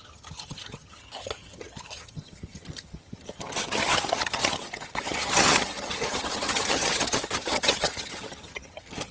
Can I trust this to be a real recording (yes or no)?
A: no